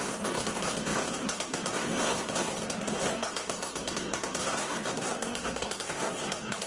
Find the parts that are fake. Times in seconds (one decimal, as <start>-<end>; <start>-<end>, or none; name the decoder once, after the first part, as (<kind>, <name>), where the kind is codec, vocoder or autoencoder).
0.0-6.7 (codec, SNAC)